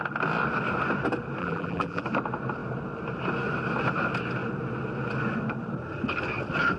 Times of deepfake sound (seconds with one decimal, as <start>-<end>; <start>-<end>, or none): 1.4-2.0